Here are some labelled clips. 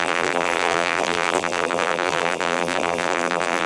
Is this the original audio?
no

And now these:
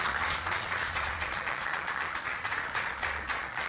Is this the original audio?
no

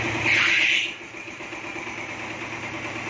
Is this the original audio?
yes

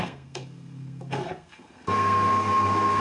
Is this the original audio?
no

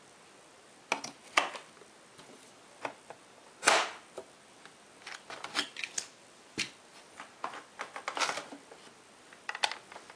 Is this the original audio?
yes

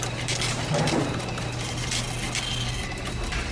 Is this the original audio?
yes